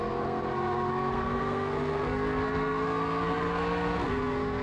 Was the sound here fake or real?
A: fake